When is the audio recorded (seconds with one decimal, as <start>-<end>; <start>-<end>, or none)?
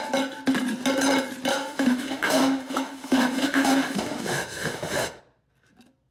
0.0-1.5; 5.2-6.1